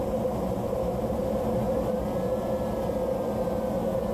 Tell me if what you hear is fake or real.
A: real